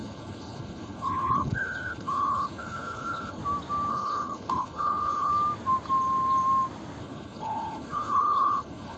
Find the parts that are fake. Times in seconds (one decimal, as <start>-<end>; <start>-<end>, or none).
0.0-3.4; 3.9-5.3; 7.0-9.0